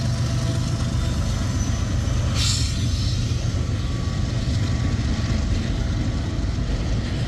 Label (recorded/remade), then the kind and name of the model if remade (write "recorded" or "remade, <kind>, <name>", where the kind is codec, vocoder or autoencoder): recorded